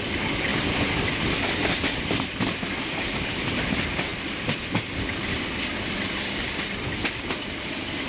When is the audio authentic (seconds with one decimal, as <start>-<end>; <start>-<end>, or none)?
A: 0.0-8.1